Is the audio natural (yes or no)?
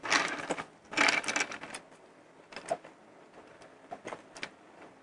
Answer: yes